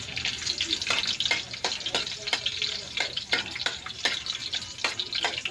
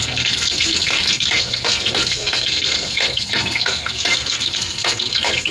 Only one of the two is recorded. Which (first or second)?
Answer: first